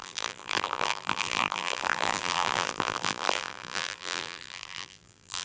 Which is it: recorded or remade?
remade